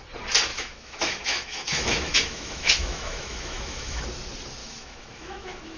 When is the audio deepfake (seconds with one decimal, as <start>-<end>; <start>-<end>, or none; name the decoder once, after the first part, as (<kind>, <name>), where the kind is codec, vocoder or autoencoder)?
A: 0.5-4.0 (autoencoder, DAC-VAE); 4.6-5.8